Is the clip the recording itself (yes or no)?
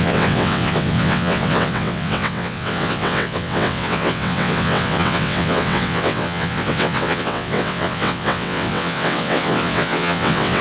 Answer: no